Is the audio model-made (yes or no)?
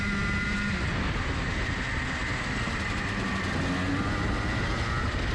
no